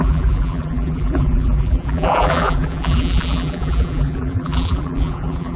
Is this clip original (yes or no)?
no